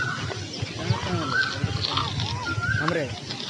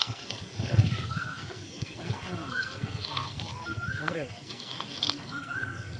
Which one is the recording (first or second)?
first